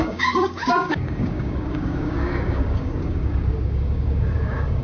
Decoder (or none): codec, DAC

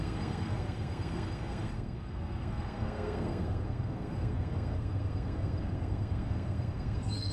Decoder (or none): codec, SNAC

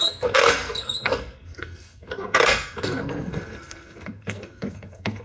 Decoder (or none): codec, SNAC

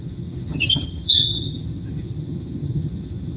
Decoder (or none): vocoder, HiFi-GAN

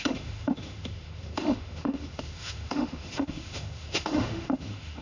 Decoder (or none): autoencoder, DAC-VAE